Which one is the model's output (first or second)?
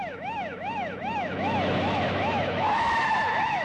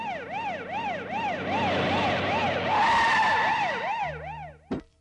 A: first